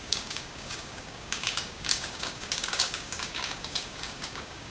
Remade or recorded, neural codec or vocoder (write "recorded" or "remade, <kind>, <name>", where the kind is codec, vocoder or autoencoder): remade, codec, DAC